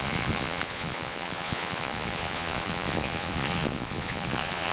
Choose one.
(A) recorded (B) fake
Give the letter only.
B